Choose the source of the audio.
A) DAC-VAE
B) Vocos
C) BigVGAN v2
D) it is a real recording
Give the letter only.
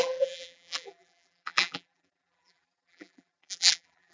C